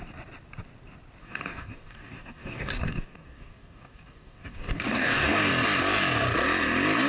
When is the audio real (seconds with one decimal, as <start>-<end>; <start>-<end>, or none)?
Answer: 0.0-1.2; 5.5-7.1